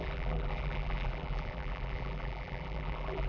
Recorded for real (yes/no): no